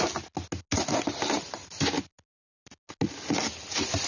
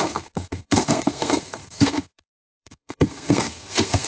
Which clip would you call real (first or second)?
first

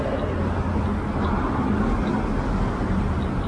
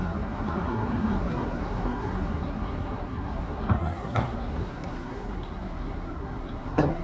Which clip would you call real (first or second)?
first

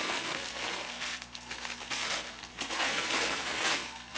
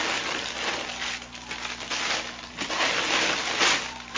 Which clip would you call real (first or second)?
second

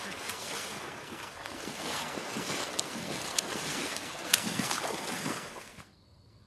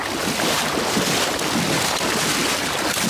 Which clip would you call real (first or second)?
second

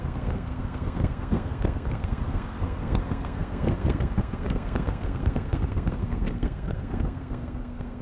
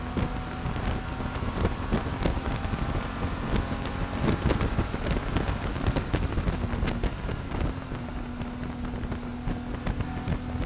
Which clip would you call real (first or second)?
second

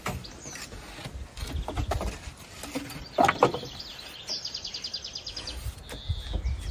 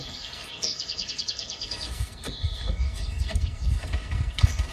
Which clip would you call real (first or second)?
first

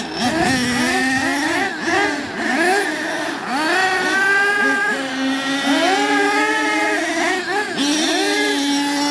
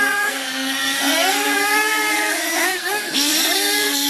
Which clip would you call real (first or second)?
first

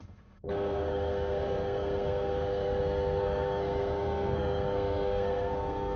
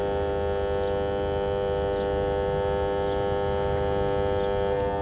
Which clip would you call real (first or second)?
second